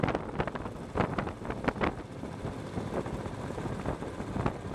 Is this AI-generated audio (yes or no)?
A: no